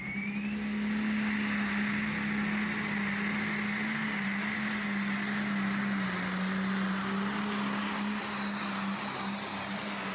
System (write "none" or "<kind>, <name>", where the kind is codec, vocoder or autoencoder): none